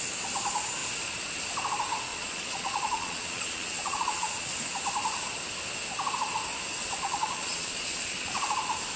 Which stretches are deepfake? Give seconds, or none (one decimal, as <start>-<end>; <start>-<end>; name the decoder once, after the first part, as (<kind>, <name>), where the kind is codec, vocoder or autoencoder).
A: 2.1-4.5 (vocoder, Vocos); 6.8-8.6